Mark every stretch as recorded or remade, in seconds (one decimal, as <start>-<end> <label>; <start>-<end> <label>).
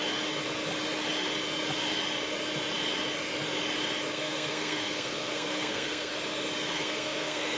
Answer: 0.0-4.1 recorded; 4.1-6.1 remade; 6.1-6.7 recorded; 6.7-7.6 remade